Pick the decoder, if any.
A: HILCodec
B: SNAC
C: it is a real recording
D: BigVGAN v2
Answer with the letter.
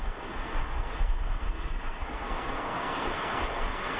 B